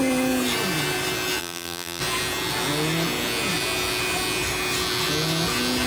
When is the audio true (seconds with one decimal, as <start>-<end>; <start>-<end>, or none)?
0.0-1.4; 2.0-5.9